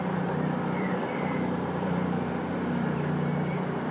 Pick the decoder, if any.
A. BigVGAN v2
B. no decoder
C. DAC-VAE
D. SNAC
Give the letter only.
A